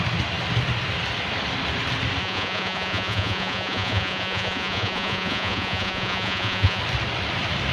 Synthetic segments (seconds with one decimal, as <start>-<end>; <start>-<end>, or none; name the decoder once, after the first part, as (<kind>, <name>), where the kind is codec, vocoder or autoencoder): 2.2-6.8 (vocoder, Vocos)